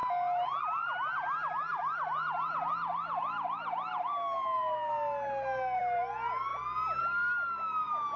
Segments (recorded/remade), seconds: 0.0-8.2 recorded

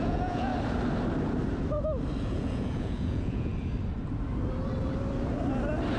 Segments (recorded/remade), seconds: 0.0-0.5 remade; 0.5-2.2 recorded; 2.2-3.5 remade; 3.5-6.0 recorded

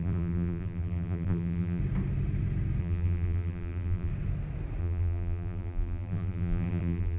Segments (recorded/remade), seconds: 0.0-1.8 remade; 1.8-2.8 recorded; 2.8-4.1 remade; 4.1-4.8 recorded; 4.8-7.2 remade